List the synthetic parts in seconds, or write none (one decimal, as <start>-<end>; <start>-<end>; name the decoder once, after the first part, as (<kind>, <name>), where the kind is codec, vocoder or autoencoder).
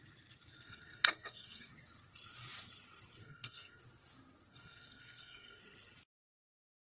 0.5-1.7 (codec, SNAC); 3.2-3.8; 4.5-5.6